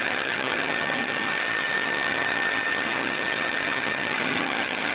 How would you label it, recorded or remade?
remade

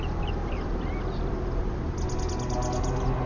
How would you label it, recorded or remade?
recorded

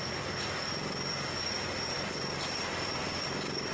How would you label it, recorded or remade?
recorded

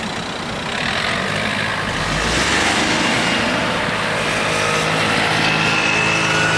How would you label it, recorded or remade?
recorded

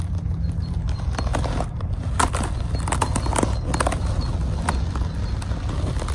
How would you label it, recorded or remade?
recorded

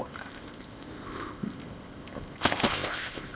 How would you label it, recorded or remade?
remade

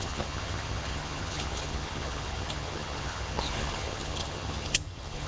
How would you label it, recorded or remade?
remade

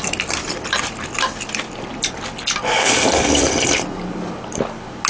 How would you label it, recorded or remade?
recorded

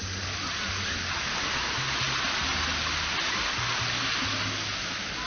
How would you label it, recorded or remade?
recorded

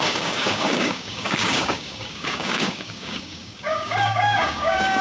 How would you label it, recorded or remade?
remade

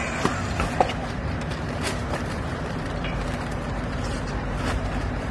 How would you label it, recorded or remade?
remade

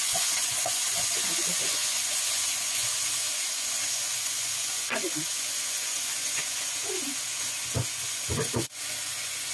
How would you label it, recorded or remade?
remade